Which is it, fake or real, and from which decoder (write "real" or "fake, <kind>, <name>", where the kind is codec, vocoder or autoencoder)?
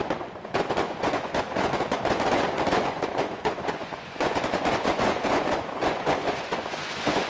fake, vocoder, Vocos